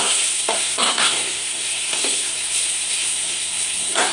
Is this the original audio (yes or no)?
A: no